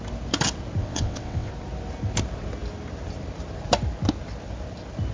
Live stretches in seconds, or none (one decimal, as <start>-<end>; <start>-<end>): 0.0-0.8; 1.5-5.1